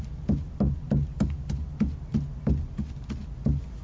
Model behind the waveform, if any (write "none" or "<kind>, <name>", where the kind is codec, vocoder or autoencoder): none